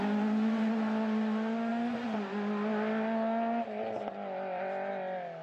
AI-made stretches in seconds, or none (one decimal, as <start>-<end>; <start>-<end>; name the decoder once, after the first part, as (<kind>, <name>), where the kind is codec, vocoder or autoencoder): none